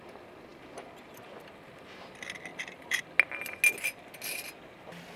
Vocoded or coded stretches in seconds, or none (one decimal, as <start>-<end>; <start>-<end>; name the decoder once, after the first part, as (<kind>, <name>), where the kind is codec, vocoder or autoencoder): 2.5-3.0 (vocoder, BigVGAN v2)